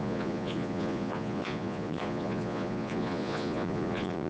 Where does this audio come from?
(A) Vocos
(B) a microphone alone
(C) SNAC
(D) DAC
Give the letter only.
A